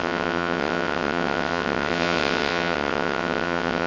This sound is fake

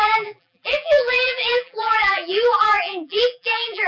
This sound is fake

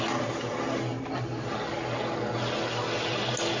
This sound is real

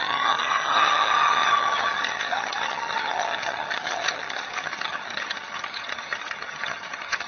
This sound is fake